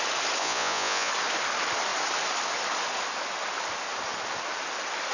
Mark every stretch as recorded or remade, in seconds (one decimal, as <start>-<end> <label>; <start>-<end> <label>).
0.0-0.4 recorded; 0.4-1.1 remade; 1.1-5.1 recorded